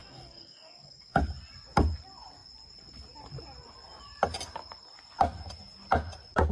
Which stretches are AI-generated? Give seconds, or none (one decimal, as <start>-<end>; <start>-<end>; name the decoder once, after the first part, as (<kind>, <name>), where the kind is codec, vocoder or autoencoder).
0.0-1.2 (codec, DAC)

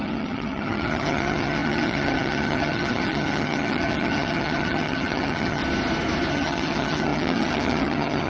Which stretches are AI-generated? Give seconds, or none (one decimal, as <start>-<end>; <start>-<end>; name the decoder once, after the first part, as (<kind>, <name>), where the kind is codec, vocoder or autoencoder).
0.0-5.6 (vocoder, HiFi-GAN); 6.3-8.3

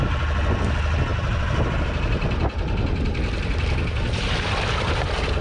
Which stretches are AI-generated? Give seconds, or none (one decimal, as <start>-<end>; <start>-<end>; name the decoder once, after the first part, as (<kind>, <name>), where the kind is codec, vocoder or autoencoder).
none

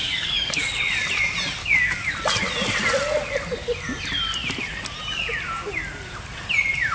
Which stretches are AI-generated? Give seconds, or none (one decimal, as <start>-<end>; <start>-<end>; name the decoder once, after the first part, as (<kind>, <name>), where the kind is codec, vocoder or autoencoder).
0.0-0.6 (codec, DAC); 1.6-2.1

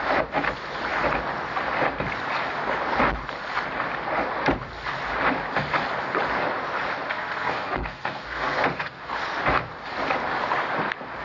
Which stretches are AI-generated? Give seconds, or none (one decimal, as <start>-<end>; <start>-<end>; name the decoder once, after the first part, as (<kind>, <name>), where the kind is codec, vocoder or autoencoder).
7.1-9.1 (codec, SNAC)